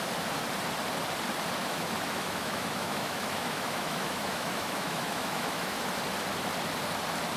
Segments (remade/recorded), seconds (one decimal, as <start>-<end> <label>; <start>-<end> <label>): 0.0-1.6 recorded; 1.6-6.0 remade; 6.0-7.4 recorded